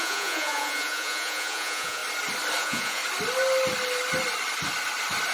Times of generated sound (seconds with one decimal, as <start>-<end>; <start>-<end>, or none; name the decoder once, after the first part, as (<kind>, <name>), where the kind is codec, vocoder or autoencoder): 0.0-2.0 (vocoder, Vocos); 2.6-3.0